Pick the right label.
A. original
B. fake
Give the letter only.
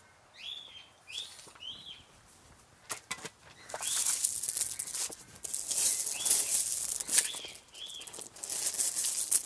A